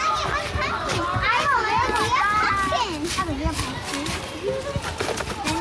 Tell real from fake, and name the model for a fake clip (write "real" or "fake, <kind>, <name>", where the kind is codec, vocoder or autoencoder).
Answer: real